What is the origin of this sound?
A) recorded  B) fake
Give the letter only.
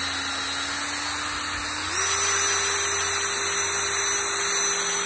A